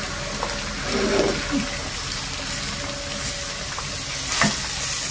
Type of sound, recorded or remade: recorded